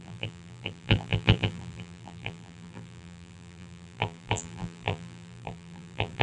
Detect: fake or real fake